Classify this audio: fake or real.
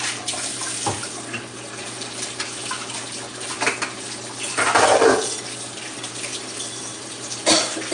real